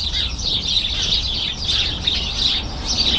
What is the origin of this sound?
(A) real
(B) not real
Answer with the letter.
A